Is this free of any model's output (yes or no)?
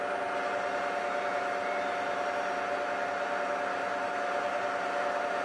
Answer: yes